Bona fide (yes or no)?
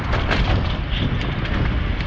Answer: yes